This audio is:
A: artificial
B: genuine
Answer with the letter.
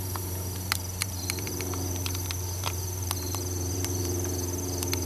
A